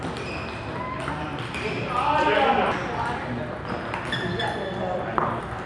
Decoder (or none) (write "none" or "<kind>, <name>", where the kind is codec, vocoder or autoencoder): none